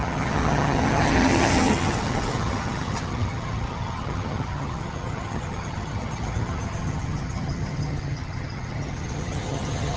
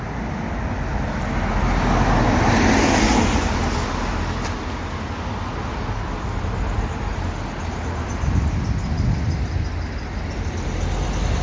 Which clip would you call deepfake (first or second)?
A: first